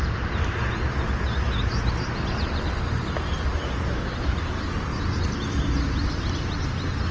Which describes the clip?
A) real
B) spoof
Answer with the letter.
A